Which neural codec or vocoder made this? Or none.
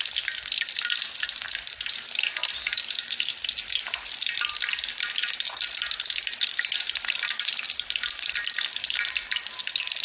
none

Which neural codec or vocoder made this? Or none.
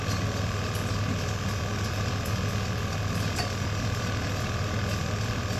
none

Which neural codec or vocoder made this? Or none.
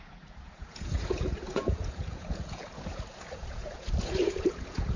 vocoder, Vocos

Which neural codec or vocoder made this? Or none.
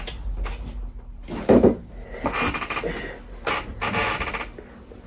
none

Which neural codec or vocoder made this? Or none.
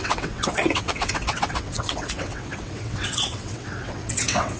vocoder, WaveNeXt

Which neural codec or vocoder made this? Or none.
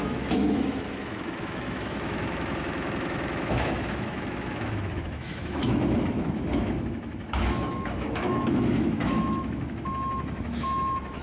autoencoder, DAC-VAE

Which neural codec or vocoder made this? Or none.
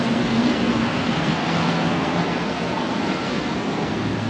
codec, SNAC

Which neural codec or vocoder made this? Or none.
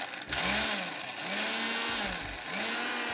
none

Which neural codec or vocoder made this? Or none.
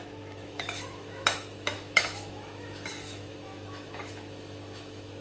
autoencoder, DAC-VAE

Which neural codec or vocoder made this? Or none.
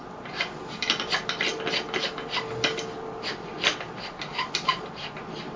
none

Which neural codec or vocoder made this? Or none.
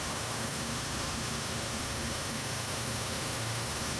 autoencoder, DAC-VAE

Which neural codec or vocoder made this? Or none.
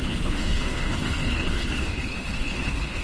codec, HILCodec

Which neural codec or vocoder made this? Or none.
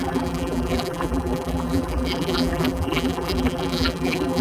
vocoder, BigVGAN v2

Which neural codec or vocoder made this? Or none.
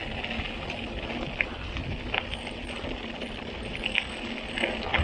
none